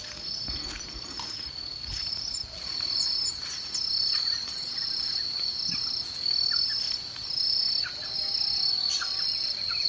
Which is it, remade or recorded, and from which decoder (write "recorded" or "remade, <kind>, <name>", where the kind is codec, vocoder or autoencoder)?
recorded